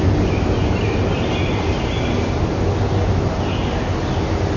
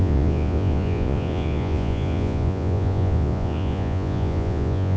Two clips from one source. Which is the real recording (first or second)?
first